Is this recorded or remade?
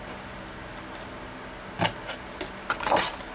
recorded